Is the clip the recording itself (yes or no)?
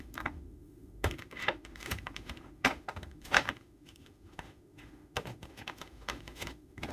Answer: no